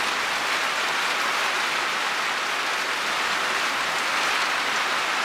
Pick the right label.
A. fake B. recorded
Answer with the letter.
B